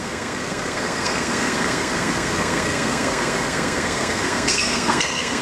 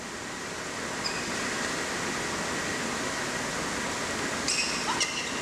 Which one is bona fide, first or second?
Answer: second